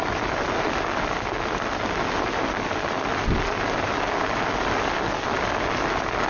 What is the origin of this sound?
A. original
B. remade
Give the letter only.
A